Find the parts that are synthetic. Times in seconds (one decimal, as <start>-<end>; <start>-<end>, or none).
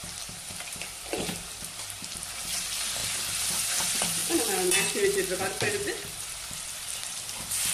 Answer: 0.0-4.2; 5.4-7.7